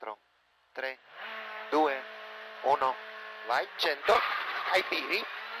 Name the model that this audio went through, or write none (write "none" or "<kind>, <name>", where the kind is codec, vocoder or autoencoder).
none